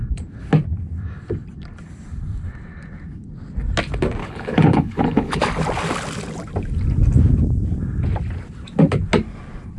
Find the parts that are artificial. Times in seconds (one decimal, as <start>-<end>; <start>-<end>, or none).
4.2-5.4